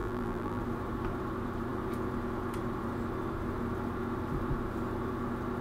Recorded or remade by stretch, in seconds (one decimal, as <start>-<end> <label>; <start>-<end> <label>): 0.0-0.6 remade; 0.6-5.6 recorded